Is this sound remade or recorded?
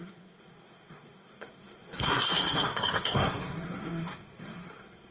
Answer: remade